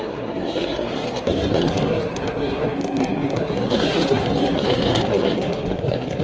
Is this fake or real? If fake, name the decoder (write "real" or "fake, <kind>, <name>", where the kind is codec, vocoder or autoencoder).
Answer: fake, codec, SNAC